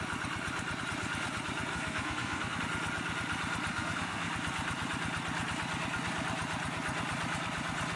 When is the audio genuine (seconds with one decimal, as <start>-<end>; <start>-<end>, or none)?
0.0-1.7; 2.6-3.7; 4.3-8.0